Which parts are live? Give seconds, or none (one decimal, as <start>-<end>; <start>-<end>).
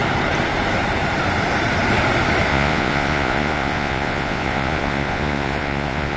0.0-2.5